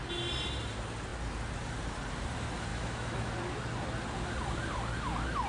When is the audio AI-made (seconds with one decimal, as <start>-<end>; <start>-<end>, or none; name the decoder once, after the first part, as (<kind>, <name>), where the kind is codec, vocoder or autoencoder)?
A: 2.7-3.3 (autoencoder, DAC-VAE)